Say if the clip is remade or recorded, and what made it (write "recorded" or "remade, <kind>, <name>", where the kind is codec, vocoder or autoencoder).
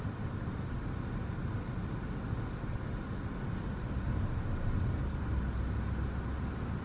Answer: recorded